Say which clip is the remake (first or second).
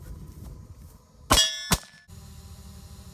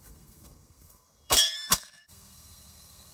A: second